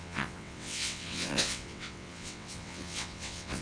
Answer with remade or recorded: remade